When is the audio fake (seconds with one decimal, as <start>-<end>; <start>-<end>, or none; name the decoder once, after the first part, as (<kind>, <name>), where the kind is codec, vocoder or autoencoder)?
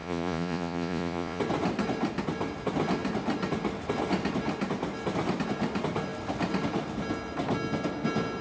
0.0-1.4 (vocoder, Vocos)